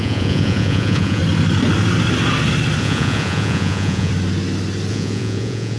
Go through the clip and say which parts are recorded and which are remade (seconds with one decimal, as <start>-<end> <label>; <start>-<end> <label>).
0.0-1.2 remade; 1.2-2.8 recorded; 2.8-4.1 remade; 4.1-4.9 recorded; 4.9-5.8 remade